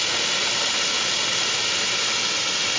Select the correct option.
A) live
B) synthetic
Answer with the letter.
A